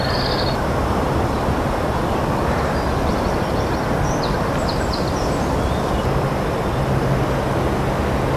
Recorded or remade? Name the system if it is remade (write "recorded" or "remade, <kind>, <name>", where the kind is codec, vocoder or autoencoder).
recorded